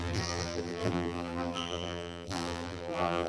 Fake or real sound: fake